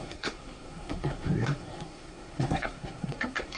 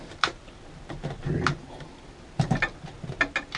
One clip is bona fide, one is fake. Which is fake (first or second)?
first